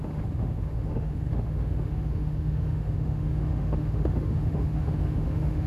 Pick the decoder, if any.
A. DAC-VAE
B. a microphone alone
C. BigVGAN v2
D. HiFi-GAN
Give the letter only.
A